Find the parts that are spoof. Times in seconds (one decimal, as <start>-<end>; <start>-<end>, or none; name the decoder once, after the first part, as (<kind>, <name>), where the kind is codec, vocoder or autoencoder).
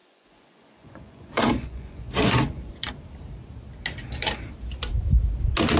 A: 0.0-2.9 (vocoder, Vocos)